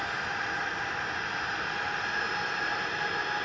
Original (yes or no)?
yes